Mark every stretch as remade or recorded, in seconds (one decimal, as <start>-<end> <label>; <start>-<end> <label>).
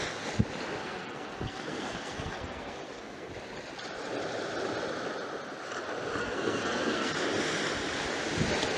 0.0-0.8 recorded; 0.8-3.3 remade; 3.3-6.2 recorded; 6.2-7.1 remade; 7.1-8.8 recorded